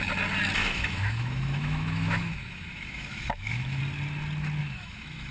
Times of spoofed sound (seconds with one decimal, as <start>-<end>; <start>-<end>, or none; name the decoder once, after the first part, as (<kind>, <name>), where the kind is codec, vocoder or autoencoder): 0.6-3.8 (autoencoder, DAC-VAE); 4.6-5.3